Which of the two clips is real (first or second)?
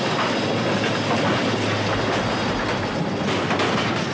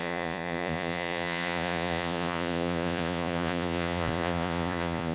first